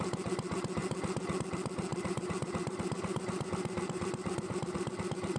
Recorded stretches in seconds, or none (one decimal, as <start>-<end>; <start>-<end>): 0.0-1.9